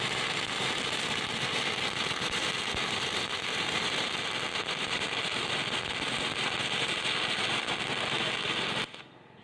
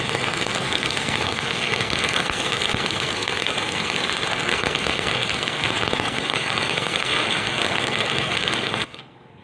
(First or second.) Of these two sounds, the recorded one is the first